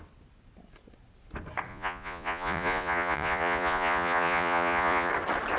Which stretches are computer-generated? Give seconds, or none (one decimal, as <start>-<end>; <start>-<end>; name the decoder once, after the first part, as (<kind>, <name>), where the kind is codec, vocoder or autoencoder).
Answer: 1.7-5.1 (vocoder, Vocos)